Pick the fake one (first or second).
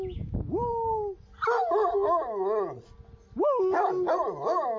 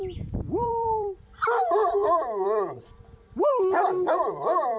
second